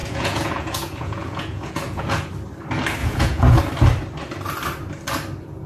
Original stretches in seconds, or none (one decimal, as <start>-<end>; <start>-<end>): 2.3-3.0; 3.6-5.7